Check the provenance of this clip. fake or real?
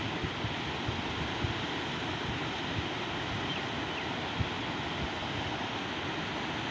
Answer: real